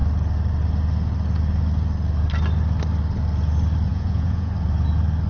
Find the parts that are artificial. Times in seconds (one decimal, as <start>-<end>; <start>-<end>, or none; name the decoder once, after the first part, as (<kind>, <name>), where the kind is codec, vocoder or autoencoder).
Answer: 3.9-4.5 (vocoder, Vocos)